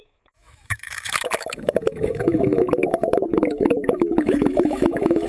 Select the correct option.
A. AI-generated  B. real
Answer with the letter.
A